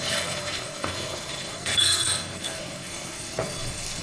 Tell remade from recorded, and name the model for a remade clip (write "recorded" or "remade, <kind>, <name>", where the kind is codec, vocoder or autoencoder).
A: remade, codec, SNAC